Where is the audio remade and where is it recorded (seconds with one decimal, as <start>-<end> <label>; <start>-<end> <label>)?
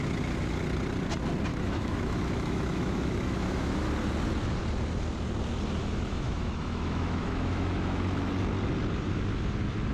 0.0-1.5 recorded; 1.5-3.9 remade; 3.9-5.8 recorded; 5.8-8.3 remade; 8.3-9.9 recorded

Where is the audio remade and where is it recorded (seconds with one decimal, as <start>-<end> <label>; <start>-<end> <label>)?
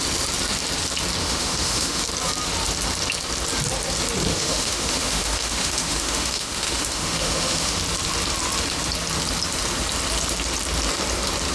0.0-1.2 recorded; 1.2-2.0 remade; 2.0-4.3 recorded; 4.3-7.8 remade; 7.8-11.5 recorded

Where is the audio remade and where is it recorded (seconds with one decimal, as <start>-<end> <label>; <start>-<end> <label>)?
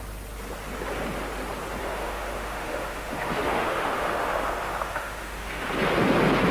0.0-1.8 recorded; 1.8-5.7 remade; 5.7-6.5 recorded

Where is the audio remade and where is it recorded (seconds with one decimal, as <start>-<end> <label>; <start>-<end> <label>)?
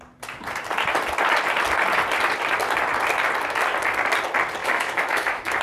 0.0-4.6 recorded; 4.6-5.6 remade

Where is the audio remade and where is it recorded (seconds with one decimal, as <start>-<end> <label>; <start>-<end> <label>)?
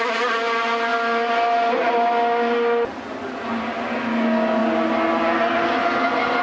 0.0-6.4 recorded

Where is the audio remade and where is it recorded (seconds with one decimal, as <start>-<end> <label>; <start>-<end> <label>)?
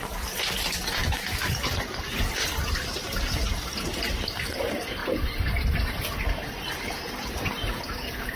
0.0-1.0 recorded; 1.0-1.5 remade; 1.5-8.4 recorded